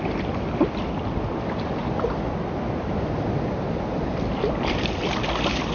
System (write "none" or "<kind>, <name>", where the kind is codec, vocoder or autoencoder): none